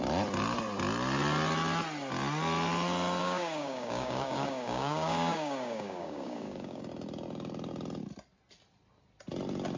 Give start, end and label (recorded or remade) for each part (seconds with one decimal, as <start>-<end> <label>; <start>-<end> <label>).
0.0-3.2 recorded; 3.2-6.8 remade; 6.8-9.8 recorded